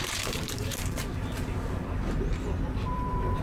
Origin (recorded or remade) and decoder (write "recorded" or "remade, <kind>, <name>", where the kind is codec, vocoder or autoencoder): remade, vocoder, BigVGAN v2